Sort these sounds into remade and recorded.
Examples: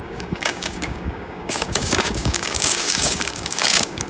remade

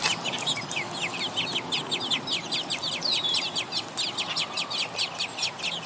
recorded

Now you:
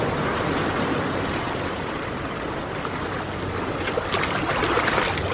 recorded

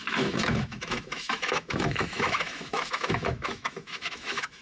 remade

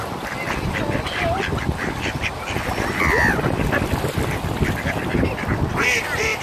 recorded